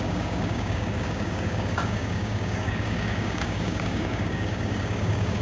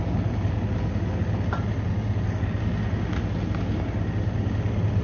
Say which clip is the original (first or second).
second